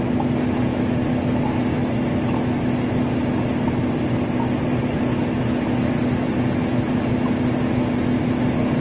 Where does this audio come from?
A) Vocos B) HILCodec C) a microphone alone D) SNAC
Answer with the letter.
C